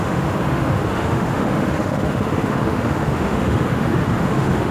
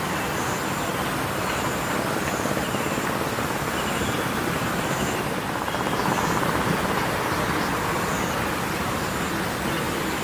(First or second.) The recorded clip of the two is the second